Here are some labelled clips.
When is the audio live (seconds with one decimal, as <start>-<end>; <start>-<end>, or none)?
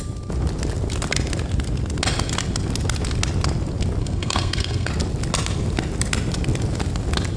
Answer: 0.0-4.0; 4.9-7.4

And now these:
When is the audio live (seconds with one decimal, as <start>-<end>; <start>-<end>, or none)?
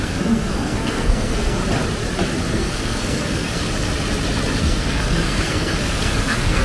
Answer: 1.6-2.5; 3.6-4.6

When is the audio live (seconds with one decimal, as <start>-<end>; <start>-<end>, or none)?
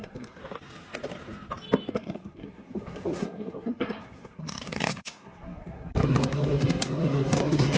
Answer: 0.4-1.9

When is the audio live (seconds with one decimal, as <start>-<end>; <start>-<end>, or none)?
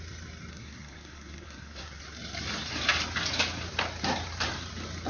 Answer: 0.0-0.5; 2.0-5.1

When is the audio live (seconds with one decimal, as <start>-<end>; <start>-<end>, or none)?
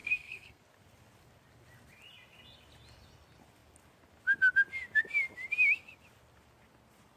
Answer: 0.6-7.2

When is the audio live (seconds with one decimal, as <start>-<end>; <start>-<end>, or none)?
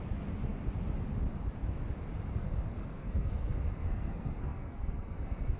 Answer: 0.0-2.3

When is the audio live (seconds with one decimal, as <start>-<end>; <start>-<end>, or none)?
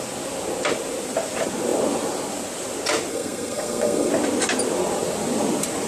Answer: 0.0-3.1; 4.1-5.9